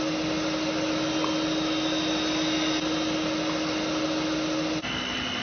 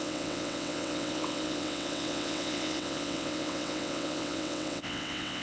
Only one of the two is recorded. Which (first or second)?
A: first